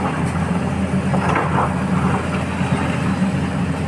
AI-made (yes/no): no